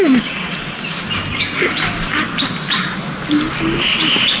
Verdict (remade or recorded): recorded